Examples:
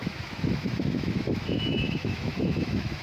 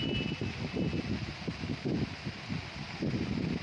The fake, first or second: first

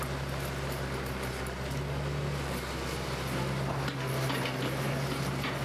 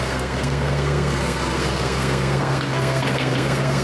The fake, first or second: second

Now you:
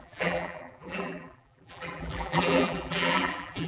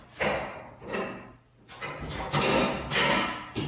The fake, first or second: first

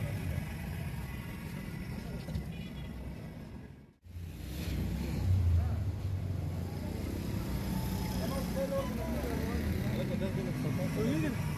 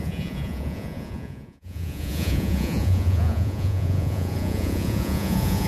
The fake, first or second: second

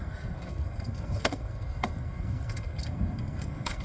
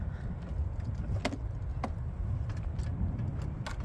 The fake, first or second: first